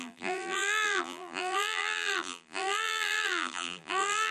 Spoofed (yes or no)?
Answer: yes